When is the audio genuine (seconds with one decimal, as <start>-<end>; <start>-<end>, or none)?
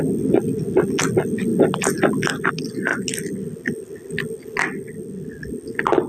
0.0-6.1